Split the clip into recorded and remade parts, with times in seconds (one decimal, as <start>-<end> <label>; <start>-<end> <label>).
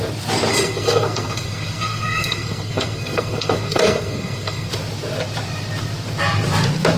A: 0.0-0.5 recorded; 0.5-4.7 remade; 4.7-7.0 recorded